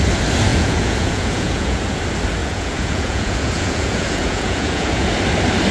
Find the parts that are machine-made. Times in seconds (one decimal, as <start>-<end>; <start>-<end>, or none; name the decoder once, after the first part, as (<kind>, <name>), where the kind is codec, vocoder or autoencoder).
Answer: 0.5-2.0 (vocoder, Vocos); 2.4-5.1